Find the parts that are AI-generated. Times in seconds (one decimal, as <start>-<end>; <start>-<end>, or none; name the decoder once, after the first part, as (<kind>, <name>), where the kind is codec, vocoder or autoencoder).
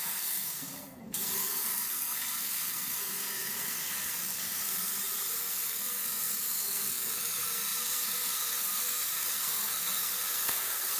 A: 0.0-4.9 (codec, SNAC); 5.4-11.0